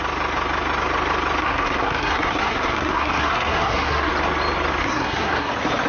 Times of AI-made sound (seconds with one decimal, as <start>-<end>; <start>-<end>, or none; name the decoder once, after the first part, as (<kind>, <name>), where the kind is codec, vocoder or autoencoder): 1.4-4.1 (codec, SNAC); 4.8-5.5